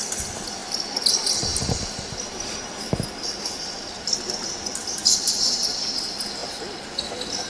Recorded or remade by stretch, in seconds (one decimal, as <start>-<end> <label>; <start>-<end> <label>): 0.0-0.6 remade; 0.6-1.1 recorded; 1.1-7.5 remade